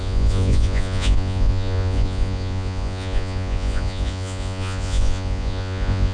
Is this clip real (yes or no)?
no